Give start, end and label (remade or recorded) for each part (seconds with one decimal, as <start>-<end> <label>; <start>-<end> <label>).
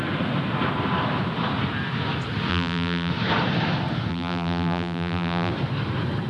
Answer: 0.0-2.5 recorded; 2.5-3.1 remade; 3.1-4.1 recorded; 4.1-5.5 remade; 5.5-6.3 recorded